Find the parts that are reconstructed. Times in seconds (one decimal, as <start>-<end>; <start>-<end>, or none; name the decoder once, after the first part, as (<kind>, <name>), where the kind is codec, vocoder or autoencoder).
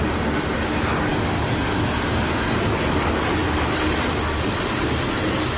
none